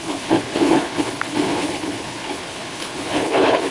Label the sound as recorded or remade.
remade